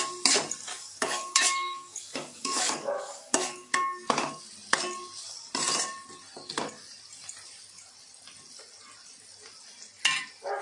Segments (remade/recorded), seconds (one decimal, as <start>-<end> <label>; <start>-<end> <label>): 0.0-0.7 recorded; 0.7-4.4 remade; 4.4-10.6 recorded